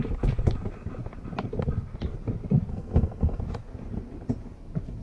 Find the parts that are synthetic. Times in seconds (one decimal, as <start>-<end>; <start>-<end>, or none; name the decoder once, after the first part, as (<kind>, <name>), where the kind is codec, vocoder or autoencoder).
2.7-3.4 (codec, SNAC)